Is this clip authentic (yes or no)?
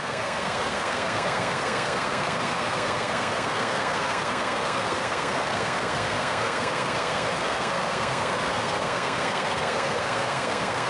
no